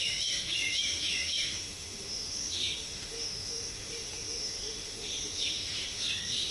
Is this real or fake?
fake